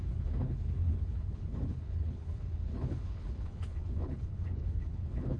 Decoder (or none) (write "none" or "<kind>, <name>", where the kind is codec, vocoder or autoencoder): codec, HILCodec